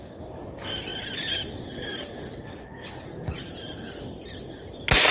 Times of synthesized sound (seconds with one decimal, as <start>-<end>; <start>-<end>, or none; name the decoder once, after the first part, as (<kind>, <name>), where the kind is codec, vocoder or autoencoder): none